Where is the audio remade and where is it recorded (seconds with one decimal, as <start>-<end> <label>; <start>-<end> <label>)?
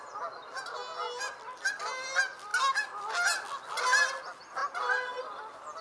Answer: 0.0-5.8 recorded